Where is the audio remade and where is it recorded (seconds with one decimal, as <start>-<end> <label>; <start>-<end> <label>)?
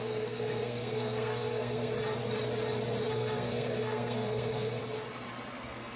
0.0-1.9 remade; 1.9-3.1 recorded; 3.1-4.8 remade; 4.8-5.5 recorded; 5.5-6.0 remade